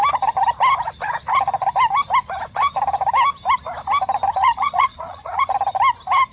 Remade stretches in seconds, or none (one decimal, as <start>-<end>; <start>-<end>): 4.4-5.4